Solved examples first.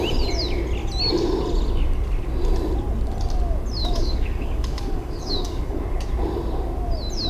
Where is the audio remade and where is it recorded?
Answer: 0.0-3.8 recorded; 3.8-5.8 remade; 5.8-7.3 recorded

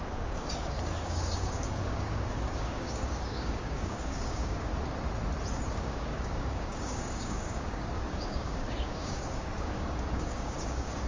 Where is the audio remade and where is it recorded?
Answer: 0.0-4.7 remade; 4.7-5.7 recorded; 5.7-11.1 remade

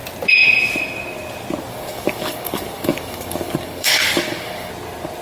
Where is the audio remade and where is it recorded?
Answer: 0.0-1.7 recorded; 1.7-4.7 remade; 4.7-5.2 recorded

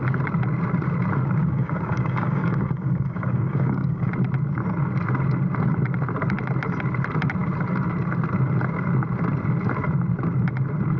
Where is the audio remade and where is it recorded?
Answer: 0.0-1.4 recorded; 1.4-4.1 remade; 4.1-11.0 recorded

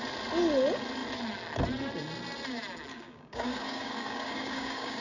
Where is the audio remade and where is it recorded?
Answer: 0.0-2.9 recorded; 2.9-5.0 remade

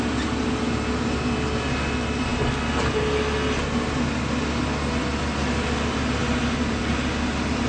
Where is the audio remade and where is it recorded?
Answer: 0.0-7.7 recorded

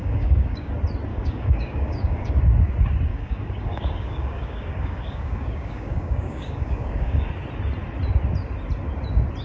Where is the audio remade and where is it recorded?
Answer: 0.0-0.7 remade; 0.7-1.1 recorded; 1.1-2.4 remade; 2.4-3.1 recorded; 3.1-7.3 remade; 7.3-9.4 recorded